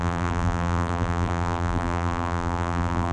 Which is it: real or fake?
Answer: fake